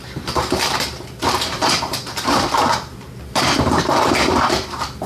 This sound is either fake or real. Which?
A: fake